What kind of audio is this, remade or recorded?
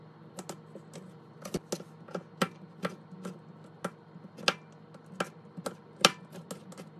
recorded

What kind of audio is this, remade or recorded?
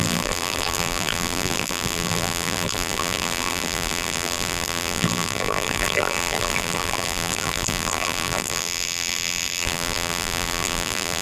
remade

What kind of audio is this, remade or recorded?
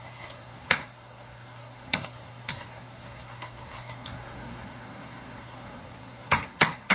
remade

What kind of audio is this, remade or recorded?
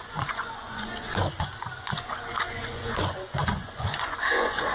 remade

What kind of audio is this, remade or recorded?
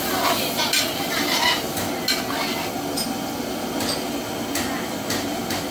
recorded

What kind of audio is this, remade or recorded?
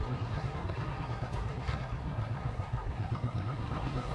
remade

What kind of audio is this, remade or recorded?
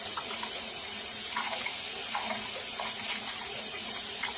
remade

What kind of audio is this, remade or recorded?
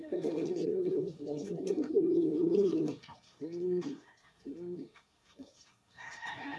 remade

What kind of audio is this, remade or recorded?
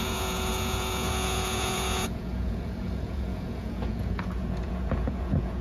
remade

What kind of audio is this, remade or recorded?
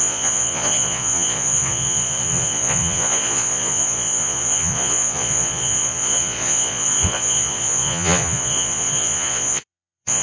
remade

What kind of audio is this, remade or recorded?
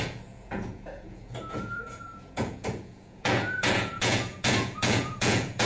remade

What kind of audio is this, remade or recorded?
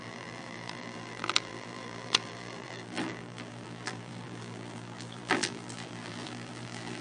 remade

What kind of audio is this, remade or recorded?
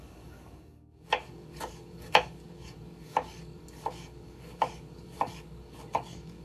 remade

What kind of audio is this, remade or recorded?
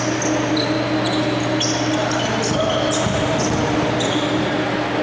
recorded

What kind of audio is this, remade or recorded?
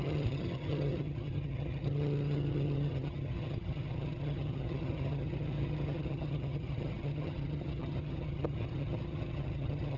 remade